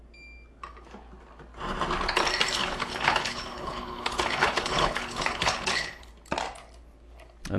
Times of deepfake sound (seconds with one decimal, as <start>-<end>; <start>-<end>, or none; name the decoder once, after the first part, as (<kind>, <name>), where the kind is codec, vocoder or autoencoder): 2.6-6.1 (codec, HILCodec)